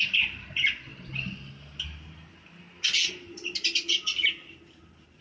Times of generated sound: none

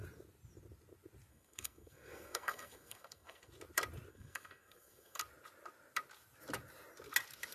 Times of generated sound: 1.3-3.5 (codec, SNAC); 4.1-5.2